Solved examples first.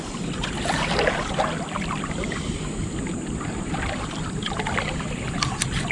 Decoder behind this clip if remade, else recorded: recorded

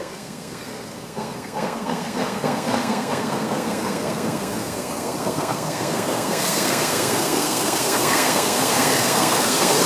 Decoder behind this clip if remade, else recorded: remade, codec, SNAC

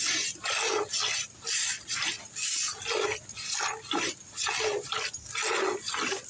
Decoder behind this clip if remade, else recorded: recorded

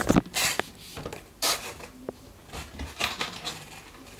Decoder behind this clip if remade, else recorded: recorded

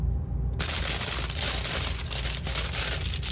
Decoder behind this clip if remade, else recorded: recorded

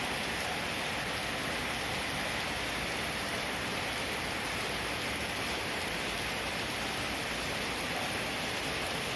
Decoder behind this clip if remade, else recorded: recorded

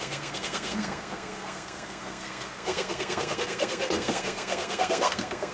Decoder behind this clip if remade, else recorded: remade, codec, SNAC